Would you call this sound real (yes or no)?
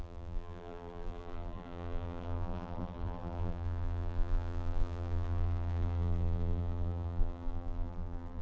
no